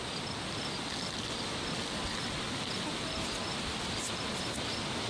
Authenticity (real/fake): real